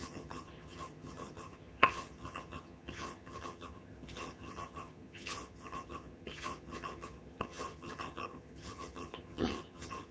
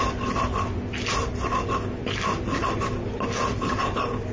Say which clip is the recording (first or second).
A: second